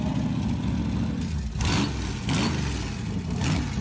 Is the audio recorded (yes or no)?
yes